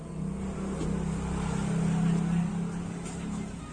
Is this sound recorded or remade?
recorded